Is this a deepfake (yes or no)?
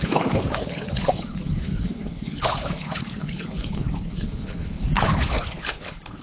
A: yes